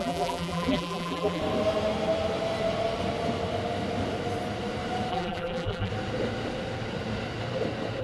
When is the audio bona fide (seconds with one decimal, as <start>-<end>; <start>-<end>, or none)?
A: 1.4-5.1; 5.9-8.0